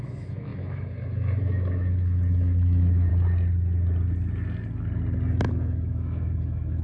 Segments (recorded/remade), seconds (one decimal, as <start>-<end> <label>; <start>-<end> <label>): 0.0-3.1 remade; 3.1-5.5 recorded; 5.5-6.8 remade